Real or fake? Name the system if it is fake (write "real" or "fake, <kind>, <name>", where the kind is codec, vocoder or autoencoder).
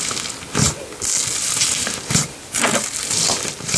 real